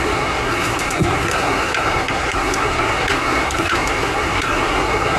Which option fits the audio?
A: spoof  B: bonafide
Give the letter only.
A